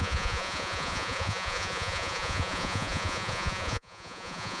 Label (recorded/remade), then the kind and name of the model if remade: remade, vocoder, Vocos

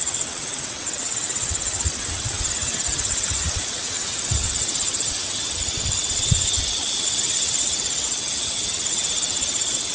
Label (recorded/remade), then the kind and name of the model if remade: remade, vocoder, WaveNeXt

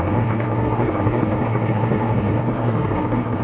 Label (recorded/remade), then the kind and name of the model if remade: remade, codec, SNAC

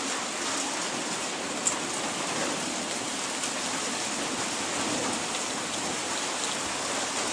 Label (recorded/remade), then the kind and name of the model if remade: recorded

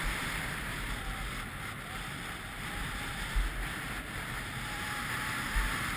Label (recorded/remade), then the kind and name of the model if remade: recorded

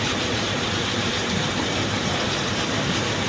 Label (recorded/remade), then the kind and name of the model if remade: remade, vocoder, BigVGAN v2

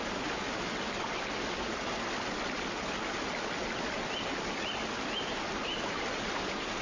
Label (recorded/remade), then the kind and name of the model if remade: recorded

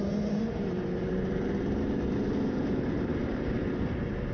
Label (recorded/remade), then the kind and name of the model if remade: remade, vocoder, BigVGAN v2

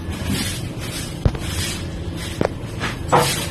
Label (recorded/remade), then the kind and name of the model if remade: recorded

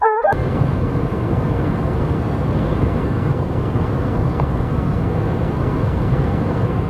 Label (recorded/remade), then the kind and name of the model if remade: remade, codec, SNAC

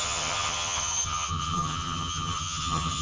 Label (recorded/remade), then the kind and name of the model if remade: remade, vocoder, HiFi-GAN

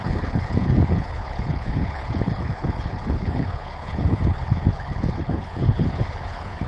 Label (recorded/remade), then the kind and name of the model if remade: remade, codec, HILCodec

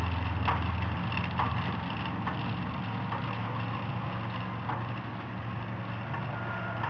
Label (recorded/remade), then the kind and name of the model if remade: recorded